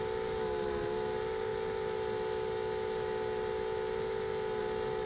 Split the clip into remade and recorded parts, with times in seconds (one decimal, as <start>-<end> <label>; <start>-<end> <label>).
0.0-5.1 recorded